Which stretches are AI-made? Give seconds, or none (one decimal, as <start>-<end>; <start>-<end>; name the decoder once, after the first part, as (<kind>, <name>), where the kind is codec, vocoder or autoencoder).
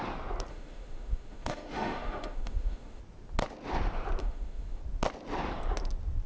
0.5-3.0 (autoencoder, DAC-VAE); 4.2-4.8